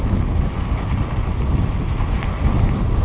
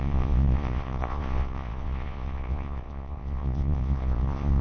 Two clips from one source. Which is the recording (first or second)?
first